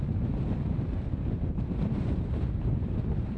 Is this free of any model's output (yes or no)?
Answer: no